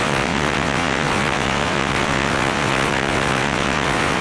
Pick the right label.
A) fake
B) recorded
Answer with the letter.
A